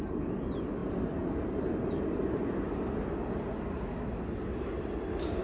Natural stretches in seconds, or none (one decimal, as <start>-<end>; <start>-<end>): 0.0-5.4